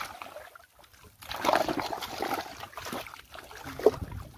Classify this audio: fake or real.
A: real